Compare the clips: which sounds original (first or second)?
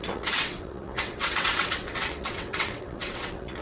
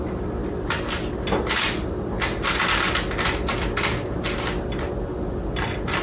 second